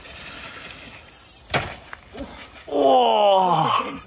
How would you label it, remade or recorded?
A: recorded